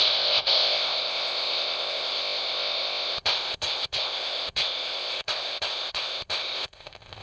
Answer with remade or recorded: remade